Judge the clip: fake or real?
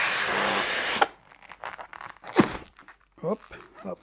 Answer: real